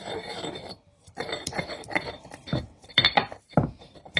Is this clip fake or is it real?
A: fake